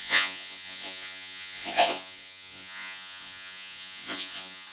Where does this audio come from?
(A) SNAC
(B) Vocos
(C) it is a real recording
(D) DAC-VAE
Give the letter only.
B